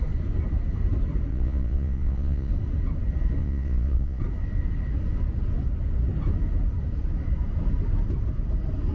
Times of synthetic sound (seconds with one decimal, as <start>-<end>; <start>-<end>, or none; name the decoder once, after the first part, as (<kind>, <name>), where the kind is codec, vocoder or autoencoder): 1.3-2.5 (vocoder, Vocos); 3.4-4.2